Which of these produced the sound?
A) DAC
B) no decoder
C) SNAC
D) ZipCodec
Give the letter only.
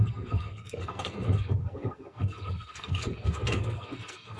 C